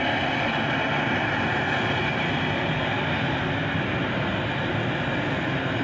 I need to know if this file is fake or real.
real